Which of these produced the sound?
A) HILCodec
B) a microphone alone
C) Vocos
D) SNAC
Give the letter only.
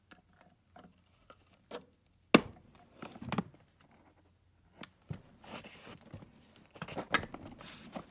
B